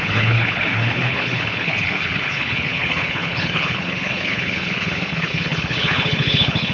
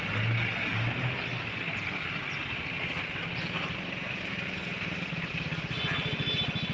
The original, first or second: second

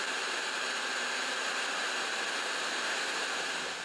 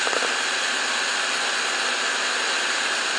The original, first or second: second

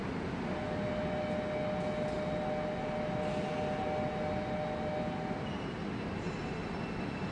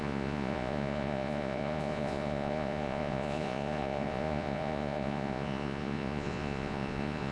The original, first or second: first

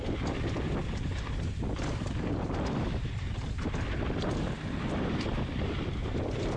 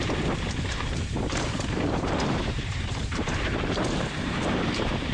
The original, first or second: first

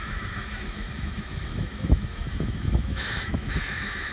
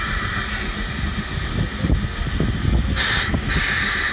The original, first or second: second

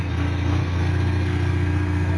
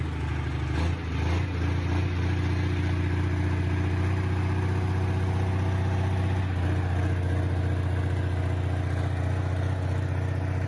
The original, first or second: second